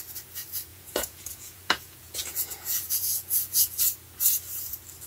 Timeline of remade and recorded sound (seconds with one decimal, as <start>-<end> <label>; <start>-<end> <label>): 0.0-0.7 recorded; 0.7-3.8 remade; 3.8-5.1 recorded